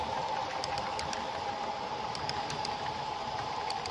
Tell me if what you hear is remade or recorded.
remade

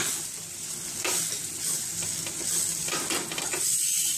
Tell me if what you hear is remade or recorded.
recorded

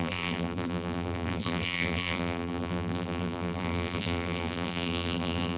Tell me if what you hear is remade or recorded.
remade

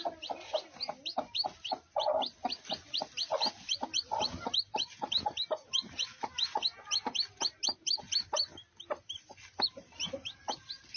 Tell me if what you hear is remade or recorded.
recorded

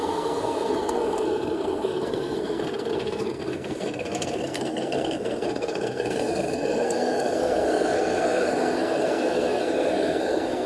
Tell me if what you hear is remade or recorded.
remade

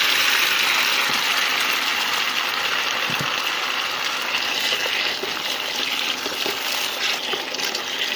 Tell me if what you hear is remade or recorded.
recorded